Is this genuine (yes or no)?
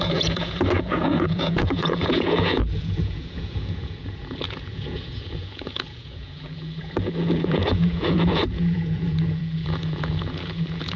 no